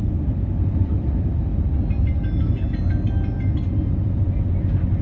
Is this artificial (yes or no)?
no